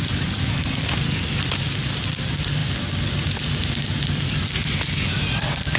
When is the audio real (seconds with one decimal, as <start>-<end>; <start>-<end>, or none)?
0.0-5.8